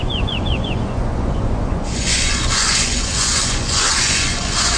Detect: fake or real fake